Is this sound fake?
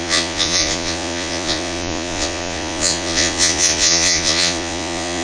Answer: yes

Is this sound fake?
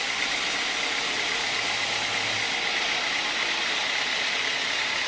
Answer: no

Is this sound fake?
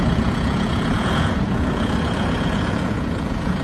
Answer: yes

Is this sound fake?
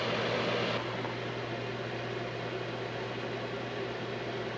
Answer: no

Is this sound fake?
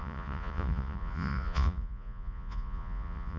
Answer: yes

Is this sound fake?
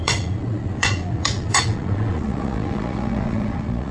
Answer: yes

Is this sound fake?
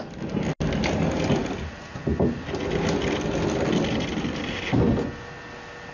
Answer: no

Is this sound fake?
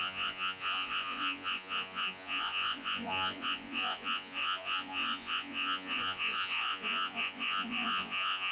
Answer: yes